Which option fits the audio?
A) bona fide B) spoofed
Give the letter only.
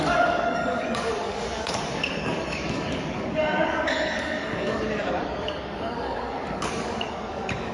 B